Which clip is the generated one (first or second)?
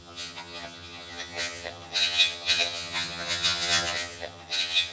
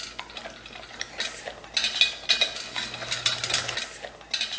first